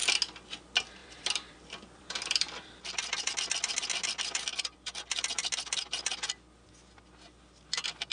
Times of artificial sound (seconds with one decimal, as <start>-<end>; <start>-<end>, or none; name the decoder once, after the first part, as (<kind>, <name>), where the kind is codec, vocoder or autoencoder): 1.0-3.3 (vocoder, BigVGAN v2); 4.5-5.2